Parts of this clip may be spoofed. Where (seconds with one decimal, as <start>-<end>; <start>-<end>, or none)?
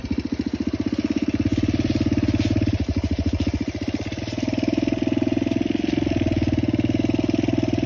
none